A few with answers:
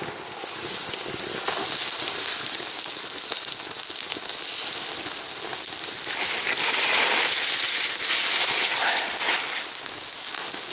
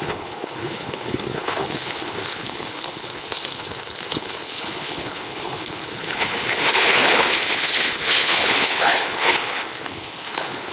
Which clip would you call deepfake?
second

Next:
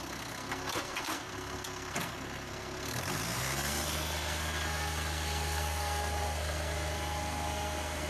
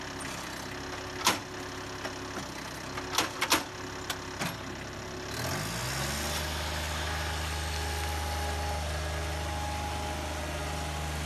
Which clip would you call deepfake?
first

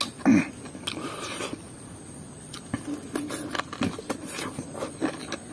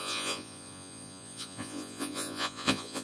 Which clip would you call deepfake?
second